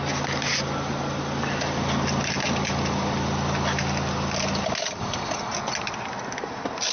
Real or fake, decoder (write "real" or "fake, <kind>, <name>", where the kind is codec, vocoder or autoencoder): real